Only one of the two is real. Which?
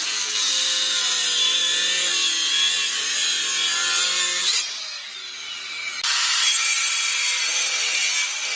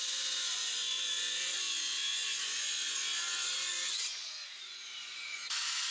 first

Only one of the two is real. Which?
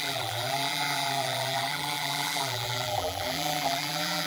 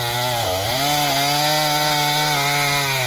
second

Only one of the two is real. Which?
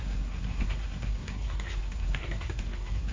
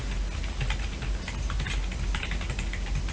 second